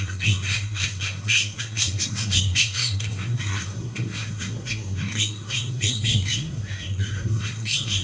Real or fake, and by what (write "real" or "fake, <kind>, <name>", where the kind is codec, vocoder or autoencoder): fake, codec, SNAC